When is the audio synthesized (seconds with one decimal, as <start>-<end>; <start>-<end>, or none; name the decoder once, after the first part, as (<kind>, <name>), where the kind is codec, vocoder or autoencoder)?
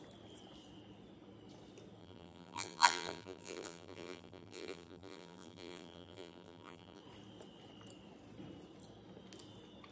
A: 2.0-7.0 (vocoder, BigVGAN v2)